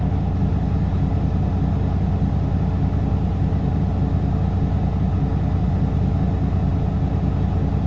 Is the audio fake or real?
real